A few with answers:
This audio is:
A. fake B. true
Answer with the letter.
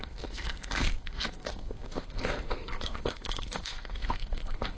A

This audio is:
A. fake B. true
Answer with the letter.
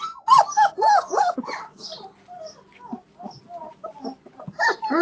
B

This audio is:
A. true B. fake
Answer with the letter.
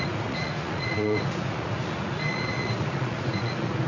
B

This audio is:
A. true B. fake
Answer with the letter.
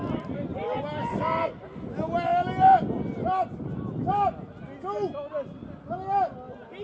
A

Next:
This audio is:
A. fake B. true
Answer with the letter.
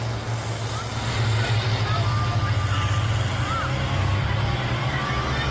B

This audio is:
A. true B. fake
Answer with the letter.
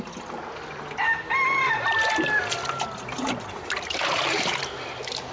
A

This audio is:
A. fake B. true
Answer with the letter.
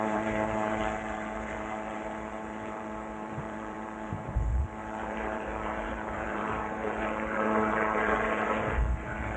A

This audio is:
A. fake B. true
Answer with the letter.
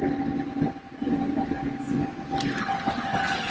B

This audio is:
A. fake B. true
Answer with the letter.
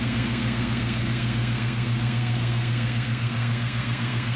A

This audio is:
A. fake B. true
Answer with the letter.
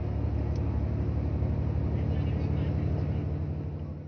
B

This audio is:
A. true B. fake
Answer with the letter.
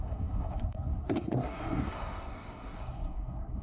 B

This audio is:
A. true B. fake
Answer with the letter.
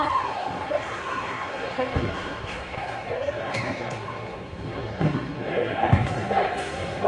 B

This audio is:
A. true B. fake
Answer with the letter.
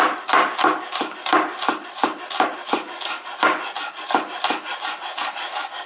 A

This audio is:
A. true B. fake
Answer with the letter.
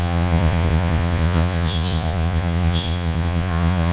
B